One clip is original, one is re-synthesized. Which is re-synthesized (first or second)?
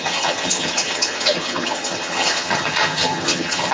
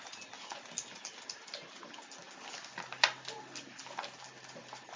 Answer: first